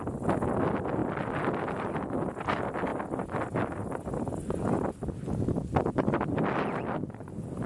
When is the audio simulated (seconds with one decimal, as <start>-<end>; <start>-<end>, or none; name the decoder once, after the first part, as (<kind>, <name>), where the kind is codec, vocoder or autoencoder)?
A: none